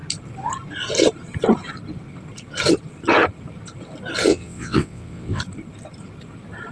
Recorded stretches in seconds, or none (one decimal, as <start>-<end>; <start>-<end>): 0.0-4.3; 5.4-6.7